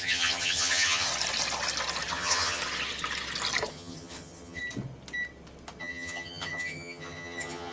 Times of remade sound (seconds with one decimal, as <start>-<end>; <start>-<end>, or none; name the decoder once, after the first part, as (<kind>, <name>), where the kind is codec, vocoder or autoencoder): 0.0-1.1 (vocoder, HiFi-GAN); 2.1-2.6; 3.7-4.6; 5.8-7.7